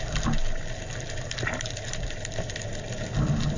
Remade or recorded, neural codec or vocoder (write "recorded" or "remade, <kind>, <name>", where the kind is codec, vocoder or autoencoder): recorded